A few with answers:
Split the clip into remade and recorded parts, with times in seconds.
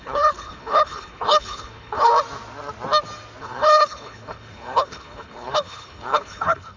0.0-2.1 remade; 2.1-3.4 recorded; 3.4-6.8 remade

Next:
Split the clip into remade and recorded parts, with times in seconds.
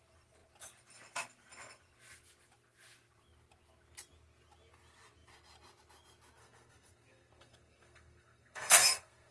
0.0-6.4 recorded; 6.4-9.3 remade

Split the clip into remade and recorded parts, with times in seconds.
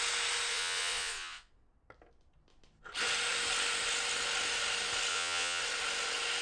0.0-0.5 recorded; 0.5-1.5 remade; 1.5-5.1 recorded; 5.1-5.6 remade; 5.6-6.4 recorded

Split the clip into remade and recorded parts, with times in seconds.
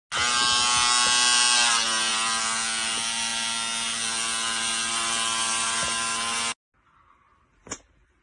0.0-8.2 recorded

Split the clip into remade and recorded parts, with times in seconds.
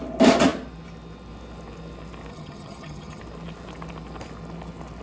0.0-2.3 recorded; 2.3-3.2 remade; 3.2-5.0 recorded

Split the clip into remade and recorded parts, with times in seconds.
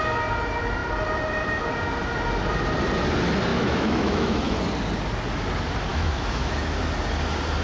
0.0-3.5 recorded; 3.5-4.6 remade; 4.6-5.9 recorded; 5.9-6.8 remade; 6.8-7.6 recorded